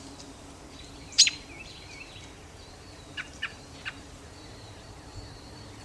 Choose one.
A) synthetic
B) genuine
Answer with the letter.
A